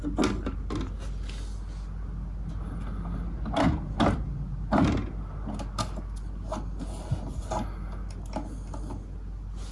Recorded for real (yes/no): yes